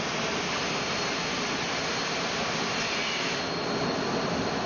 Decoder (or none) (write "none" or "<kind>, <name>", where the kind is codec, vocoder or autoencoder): none